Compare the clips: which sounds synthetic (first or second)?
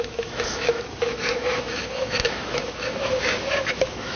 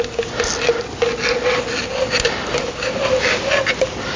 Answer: first